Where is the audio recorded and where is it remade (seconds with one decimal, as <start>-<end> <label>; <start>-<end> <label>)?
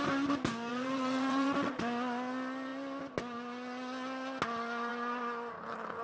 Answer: 0.0-0.7 recorded; 0.7-1.8 remade; 1.8-6.0 recorded